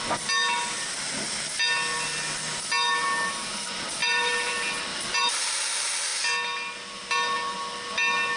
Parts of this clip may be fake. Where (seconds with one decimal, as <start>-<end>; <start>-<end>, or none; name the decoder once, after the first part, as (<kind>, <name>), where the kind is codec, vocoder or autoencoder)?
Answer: 4.0-4.5 (vocoder, BigVGAN v2); 4.9-5.5